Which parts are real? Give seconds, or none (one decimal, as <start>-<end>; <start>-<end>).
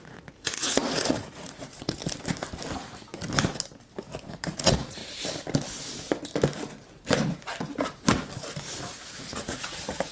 2.0-4.3; 5.0-9.1